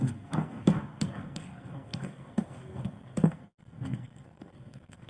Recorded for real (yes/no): no